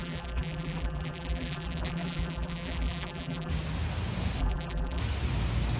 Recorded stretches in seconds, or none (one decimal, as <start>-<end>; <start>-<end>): 3.5-4.4; 5.0-5.8